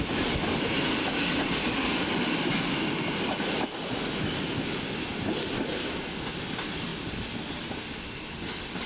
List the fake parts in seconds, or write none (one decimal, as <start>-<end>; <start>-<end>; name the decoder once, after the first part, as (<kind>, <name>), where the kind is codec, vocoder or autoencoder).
none